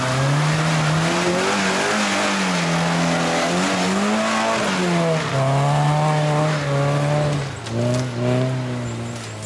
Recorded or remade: recorded